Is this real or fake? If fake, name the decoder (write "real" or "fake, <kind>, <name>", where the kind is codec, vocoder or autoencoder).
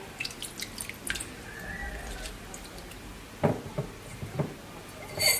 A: real